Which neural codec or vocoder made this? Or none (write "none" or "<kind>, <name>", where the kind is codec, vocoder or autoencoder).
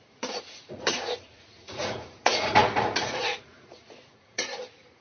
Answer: vocoder, Vocos